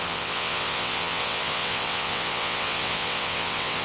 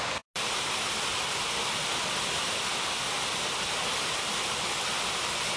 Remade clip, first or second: first